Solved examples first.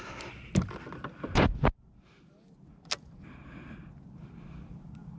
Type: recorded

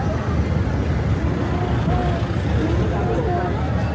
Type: recorded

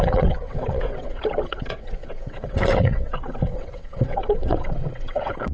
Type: remade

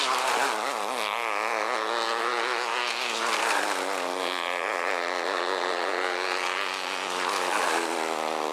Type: recorded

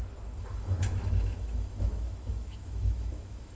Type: remade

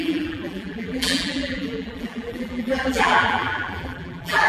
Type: remade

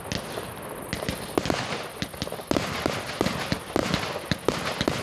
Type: recorded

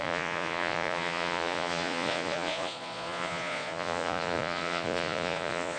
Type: remade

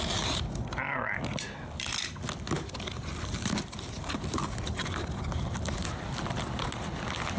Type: recorded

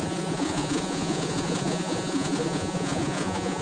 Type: remade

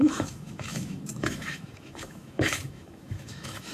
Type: remade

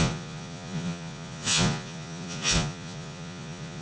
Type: remade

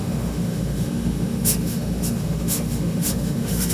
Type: remade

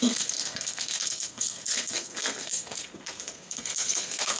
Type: remade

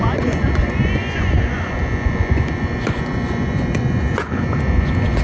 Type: remade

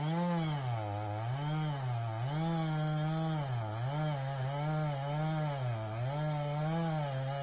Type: recorded